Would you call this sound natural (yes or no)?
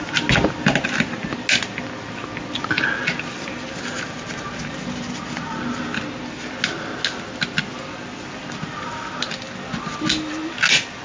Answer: yes